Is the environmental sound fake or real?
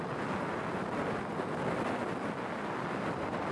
real